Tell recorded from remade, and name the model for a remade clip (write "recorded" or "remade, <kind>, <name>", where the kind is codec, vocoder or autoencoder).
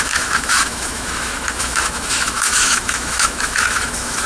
remade, autoencoder, DAC-VAE